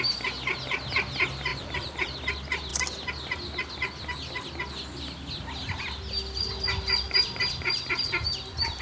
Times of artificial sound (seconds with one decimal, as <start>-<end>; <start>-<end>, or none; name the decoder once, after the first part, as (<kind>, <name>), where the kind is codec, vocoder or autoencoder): 1.5-2.2 (vocoder, BigVGAN v2)